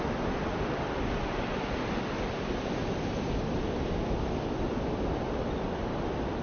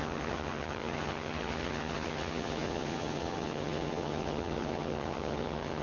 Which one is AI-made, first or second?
second